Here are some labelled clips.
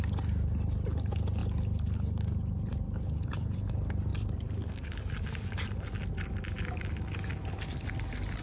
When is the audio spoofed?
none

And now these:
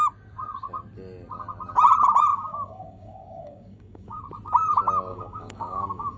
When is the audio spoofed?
2.3-4.2 (codec, DAC); 5.1-6.2

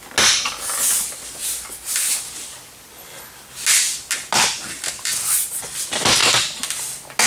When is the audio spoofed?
none